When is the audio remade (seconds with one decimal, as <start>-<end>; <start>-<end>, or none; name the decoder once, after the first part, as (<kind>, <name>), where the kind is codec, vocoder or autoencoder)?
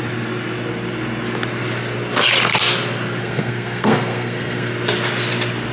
3.2-4.7 (codec, SNAC)